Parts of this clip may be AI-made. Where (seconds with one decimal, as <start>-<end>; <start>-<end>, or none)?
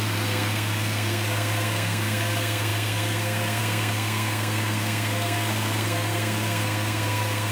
0.0-7.5